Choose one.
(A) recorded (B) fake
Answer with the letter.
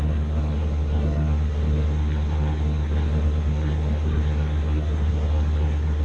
B